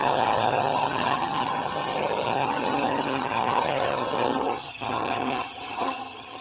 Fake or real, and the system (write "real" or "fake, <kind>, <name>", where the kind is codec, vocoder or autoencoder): fake, vocoder, HiFi-GAN